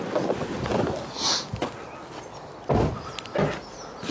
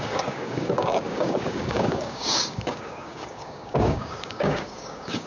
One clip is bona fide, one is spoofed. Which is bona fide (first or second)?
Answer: first